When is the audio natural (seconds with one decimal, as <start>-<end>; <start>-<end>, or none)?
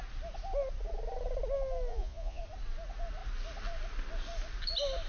0.0-1.9; 2.4-5.1